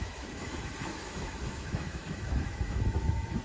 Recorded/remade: remade